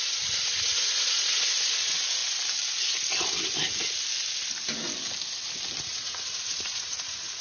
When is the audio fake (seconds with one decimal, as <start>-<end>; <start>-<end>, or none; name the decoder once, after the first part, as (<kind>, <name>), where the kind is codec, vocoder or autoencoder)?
0.0-2.2 (vocoder, Vocos); 5.8-7.4